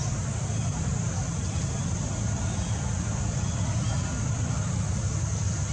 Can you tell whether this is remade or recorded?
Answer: recorded